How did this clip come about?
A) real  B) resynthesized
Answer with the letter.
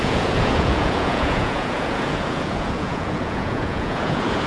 B